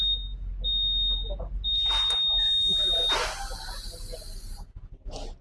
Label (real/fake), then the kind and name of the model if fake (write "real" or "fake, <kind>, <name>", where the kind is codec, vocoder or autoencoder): real